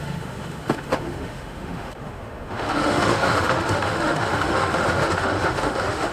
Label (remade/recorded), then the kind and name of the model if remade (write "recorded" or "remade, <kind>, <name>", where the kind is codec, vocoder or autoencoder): remade, autoencoder, DAC-VAE